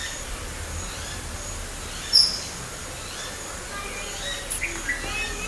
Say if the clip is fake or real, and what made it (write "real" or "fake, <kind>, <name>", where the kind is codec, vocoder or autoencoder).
real